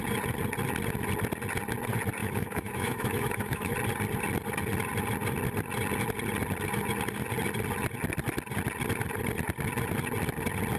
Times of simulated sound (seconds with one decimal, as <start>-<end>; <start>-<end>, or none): 2.2-3.7